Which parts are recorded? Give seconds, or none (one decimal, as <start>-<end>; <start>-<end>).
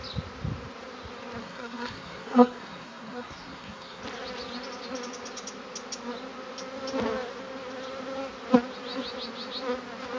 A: 0.0-1.4; 4.0-10.2